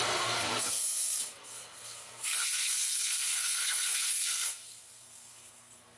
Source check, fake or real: fake